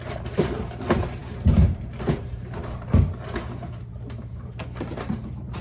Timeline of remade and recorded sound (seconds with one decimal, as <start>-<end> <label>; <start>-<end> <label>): 0.0-5.6 remade